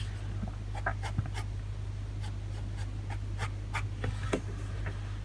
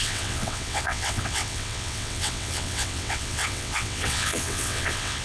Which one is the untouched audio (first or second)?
first